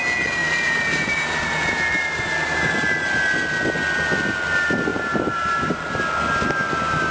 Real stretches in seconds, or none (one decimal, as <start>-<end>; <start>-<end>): 0.0-0.4; 2.7-4.9; 6.0-7.1

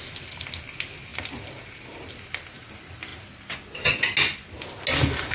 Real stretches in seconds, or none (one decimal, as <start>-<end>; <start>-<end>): 0.0-1.1; 2.1-5.3

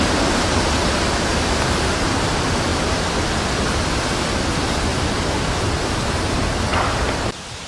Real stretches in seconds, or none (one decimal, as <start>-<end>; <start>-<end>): 0.0-1.3; 2.1-2.7; 4.0-4.9; 5.8-6.7

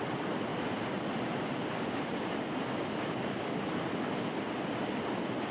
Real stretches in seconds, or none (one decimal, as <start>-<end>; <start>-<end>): 0.0-5.5

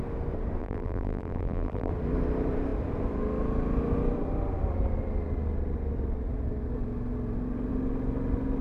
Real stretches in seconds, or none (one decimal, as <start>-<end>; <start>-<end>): 0.0-0.6; 1.9-8.6

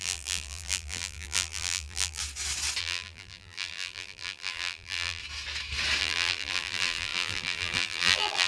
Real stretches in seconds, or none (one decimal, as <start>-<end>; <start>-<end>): 2.2-2.8; 5.2-6.0

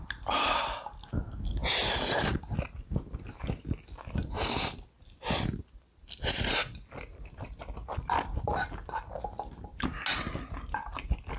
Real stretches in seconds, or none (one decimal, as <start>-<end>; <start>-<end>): 0.0-7.1; 7.6-11.4

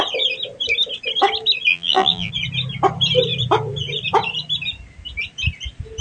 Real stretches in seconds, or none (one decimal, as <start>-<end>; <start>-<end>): 0.0-1.7; 2.3-6.0